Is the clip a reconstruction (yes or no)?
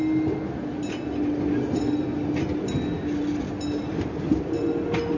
no